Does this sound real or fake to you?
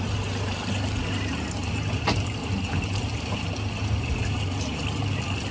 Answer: real